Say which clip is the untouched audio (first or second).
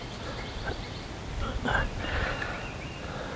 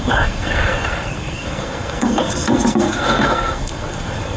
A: first